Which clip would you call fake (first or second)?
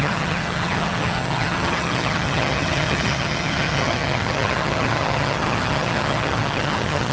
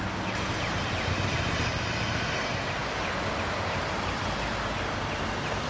first